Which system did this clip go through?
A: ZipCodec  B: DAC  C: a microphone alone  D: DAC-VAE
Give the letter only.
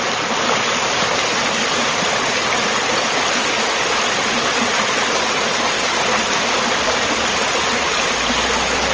C